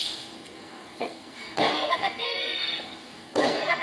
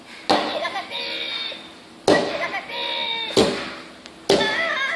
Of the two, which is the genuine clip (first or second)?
second